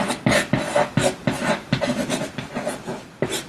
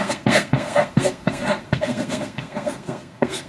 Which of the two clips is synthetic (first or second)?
second